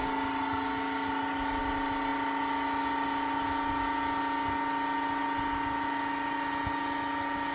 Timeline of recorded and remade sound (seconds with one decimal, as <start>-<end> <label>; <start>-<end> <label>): 0.0-7.5 recorded